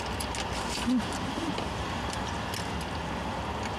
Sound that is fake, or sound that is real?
real